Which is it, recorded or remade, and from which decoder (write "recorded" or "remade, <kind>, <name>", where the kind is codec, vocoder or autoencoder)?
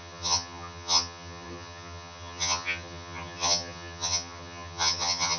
remade, vocoder, HiFi-GAN